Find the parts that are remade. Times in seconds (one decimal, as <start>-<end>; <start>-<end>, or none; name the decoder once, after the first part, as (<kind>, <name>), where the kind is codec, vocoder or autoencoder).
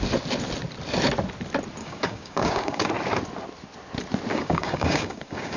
1.8-2.9 (codec, DAC); 4.3-5.6